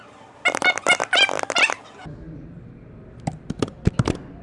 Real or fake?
real